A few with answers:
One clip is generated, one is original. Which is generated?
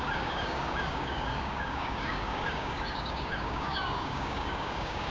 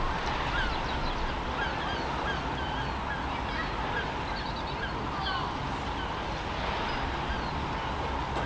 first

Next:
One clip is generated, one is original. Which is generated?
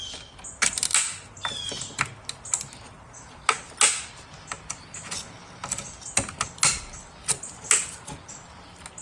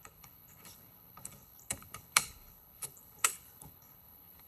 second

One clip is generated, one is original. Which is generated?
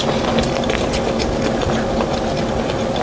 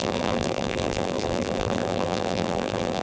second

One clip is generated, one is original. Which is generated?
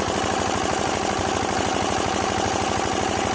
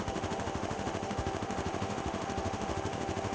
second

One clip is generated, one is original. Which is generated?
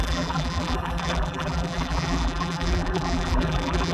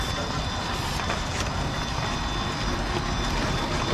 first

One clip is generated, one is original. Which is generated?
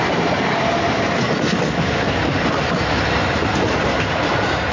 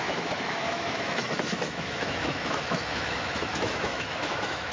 second